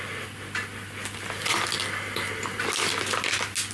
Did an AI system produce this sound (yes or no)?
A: no